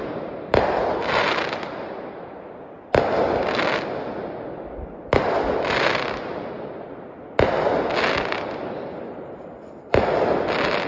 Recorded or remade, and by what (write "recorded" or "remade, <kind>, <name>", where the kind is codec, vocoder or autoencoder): recorded